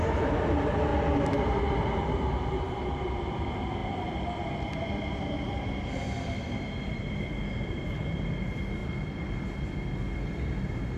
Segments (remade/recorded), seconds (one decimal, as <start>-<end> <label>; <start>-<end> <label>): 0.0-0.9 remade; 0.9-2.7 recorded; 2.7-8.8 remade; 8.8-10.3 recorded; 10.3-11.0 remade